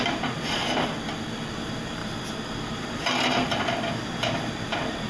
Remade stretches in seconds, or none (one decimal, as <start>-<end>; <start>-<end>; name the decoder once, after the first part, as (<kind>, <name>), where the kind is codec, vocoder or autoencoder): 0.0-0.6 (vocoder, BigVGAN v2); 1.5-2.0; 2.7-5.1